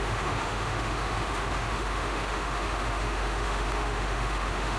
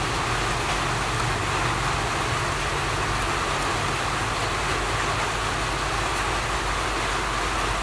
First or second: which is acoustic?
second